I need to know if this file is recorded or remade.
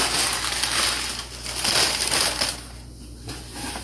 recorded